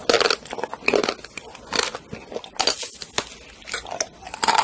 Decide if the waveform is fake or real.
real